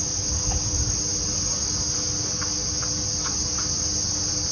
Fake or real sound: real